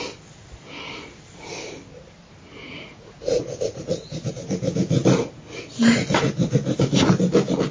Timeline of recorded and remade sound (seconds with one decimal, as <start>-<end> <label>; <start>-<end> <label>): 0.0-2.6 recorded; 2.6-4.3 remade; 4.3-7.7 recorded